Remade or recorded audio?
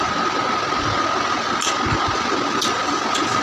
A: recorded